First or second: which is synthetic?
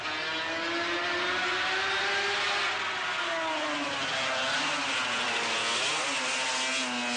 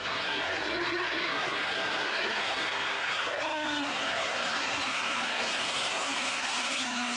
second